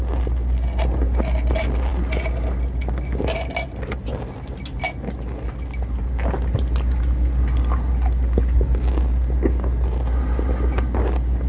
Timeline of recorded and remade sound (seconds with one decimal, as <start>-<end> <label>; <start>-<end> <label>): 0.0-11.5 recorded